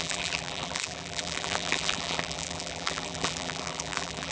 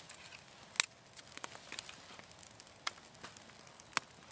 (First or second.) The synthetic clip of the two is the first